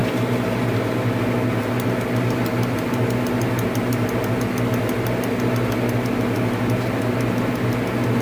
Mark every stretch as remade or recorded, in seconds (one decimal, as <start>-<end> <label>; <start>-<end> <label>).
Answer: 0.0-8.2 recorded